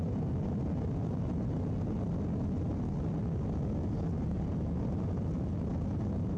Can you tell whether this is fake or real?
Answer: real